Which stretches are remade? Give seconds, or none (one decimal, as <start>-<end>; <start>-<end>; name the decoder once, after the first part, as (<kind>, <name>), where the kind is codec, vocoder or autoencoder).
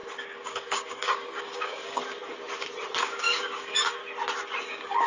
0.0-2.0 (codec, DAC); 3.0-4.0; 4.6-5.1